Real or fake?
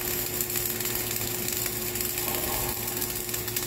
real